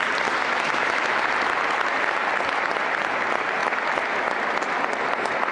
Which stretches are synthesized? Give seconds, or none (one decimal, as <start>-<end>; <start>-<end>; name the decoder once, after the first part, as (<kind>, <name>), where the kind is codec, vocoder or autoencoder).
0.4-1.1 (autoencoder, DAC-VAE)